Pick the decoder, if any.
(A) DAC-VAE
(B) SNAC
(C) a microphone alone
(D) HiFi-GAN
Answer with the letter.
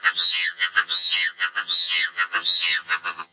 D